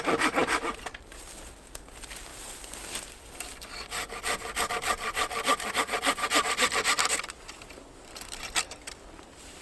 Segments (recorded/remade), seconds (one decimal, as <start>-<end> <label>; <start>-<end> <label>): 0.0-9.6 recorded